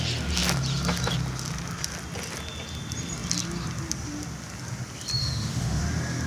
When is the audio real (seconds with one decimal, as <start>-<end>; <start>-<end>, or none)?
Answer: 0.0-5.2; 5.8-6.3